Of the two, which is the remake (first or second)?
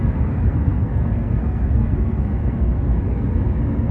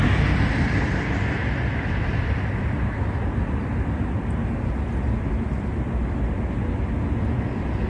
first